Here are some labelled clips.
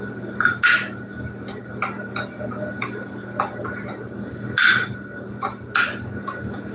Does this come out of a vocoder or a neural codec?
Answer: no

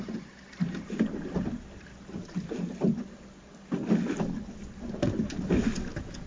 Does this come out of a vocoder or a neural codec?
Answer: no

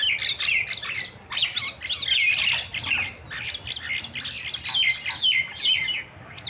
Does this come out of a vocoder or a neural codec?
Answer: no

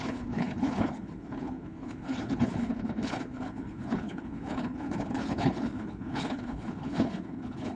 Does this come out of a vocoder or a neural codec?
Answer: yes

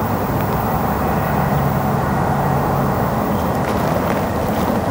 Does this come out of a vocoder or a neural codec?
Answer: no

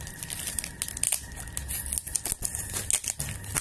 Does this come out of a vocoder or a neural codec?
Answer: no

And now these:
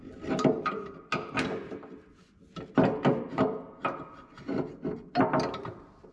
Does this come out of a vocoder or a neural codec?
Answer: no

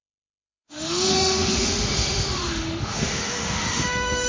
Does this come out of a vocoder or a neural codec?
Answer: yes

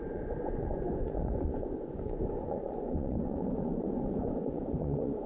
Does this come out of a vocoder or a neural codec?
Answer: yes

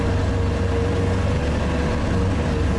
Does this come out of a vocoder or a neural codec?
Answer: no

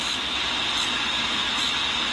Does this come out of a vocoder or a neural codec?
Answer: no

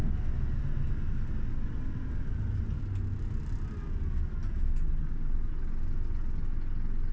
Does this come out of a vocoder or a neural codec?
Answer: no